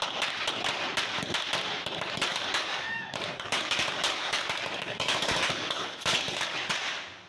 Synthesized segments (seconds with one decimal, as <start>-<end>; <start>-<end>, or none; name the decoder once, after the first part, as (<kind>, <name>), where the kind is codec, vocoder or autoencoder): 2.3-6.7 (codec, DAC)